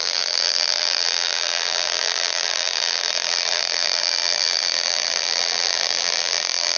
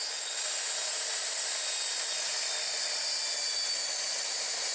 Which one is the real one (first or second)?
second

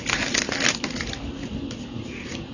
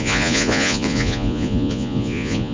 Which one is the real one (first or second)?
first